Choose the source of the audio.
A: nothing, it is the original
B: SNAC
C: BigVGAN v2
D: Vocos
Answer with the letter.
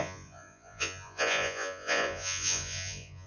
D